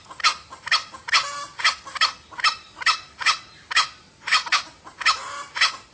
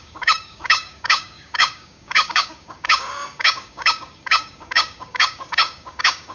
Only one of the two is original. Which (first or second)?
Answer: first